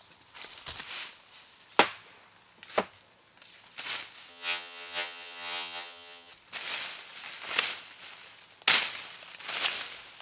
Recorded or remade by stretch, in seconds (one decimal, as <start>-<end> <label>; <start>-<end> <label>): 0.0-4.3 recorded; 4.3-6.3 remade; 6.3-10.2 recorded